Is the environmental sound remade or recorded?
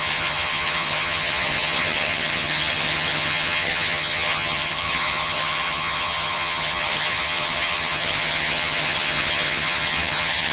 remade